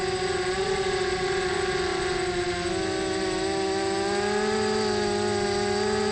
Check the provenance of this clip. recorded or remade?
recorded